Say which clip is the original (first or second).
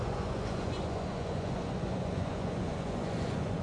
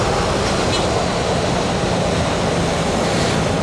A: second